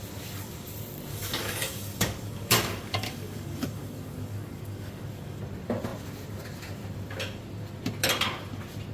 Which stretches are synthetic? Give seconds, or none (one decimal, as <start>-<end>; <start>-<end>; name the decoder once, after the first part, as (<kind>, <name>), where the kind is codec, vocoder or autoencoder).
1.1-5.4 (codec, DAC)